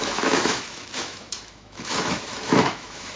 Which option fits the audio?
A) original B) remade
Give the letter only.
B